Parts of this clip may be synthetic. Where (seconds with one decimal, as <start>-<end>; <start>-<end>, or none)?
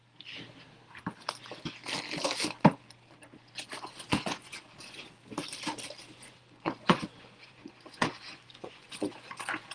3.3-5.3; 6.1-9.7